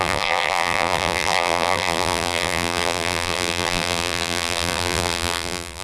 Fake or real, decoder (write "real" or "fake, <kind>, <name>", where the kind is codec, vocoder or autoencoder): fake, vocoder, BigVGAN v2